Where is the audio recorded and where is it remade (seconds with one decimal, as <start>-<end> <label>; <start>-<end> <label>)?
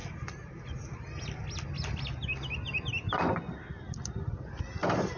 0.0-5.2 recorded